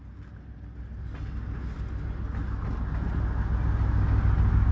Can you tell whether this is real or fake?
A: real